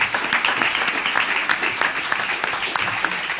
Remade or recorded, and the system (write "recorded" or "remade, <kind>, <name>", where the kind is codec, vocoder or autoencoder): recorded